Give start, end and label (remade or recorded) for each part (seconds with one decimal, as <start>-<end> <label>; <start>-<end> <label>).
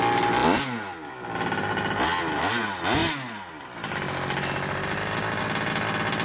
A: 0.0-6.2 recorded